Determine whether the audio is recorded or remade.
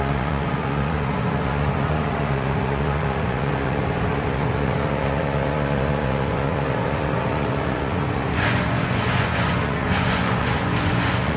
remade